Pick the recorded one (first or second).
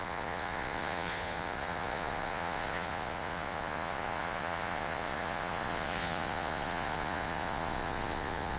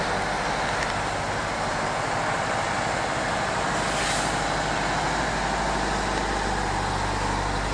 second